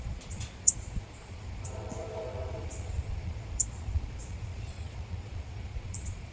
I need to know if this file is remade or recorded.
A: remade